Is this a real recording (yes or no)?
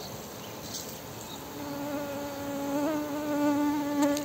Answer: yes